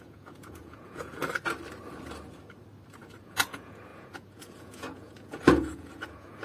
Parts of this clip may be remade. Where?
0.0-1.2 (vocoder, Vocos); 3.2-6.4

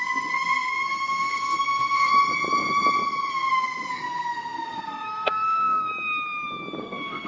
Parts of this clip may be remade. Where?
0.0-2.1 (codec, SNAC); 3.3-5.9; 6.8-7.3

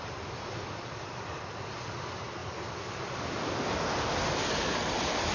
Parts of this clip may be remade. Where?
none

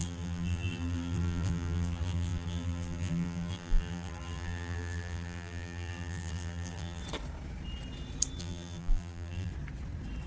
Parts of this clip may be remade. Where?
0.0-7.0 (vocoder, BigVGAN v2); 8.4-9.5

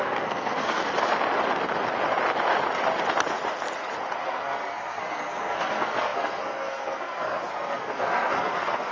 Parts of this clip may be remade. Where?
0.0-0.8 (codec, SNAC); 4.2-8.9